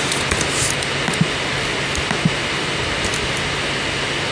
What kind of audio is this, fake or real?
real